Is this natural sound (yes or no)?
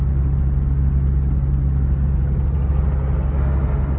yes